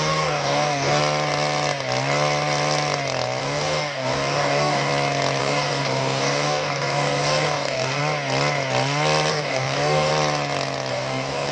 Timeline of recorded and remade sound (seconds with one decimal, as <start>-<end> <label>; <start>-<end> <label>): 0.0-1.0 remade; 1.0-3.4 recorded; 3.4-4.9 remade; 4.9-5.4 recorded; 5.4-8.0 remade; 8.0-9.3 recorded; 9.3-10.1 remade; 10.1-10.9 recorded; 10.9-11.5 remade